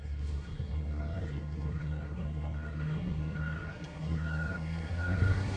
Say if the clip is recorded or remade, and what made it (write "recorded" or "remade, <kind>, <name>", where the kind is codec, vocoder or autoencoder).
remade, codec, SNAC